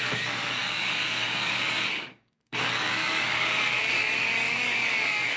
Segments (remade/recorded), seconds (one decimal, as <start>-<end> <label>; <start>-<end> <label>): 0.0-5.4 remade